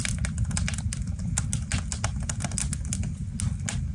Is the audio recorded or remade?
recorded